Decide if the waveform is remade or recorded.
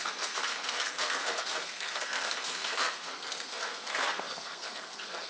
remade